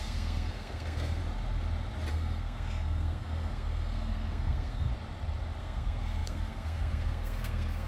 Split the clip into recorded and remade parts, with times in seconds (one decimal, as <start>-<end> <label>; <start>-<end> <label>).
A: 0.0-1.2 remade; 1.2-2.1 recorded; 2.1-4.9 remade; 4.9-5.6 recorded; 5.6-7.9 remade